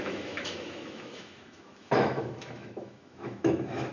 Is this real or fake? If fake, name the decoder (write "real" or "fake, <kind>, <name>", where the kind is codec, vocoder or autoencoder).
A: fake, autoencoder, DAC-VAE